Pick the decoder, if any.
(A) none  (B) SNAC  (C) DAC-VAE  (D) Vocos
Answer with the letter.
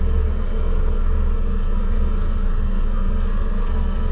B